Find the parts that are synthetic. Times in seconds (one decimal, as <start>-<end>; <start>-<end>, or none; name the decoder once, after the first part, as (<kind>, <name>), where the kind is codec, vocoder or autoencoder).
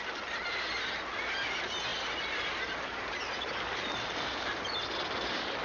1.9-4.4 (vocoder, BigVGAN v2)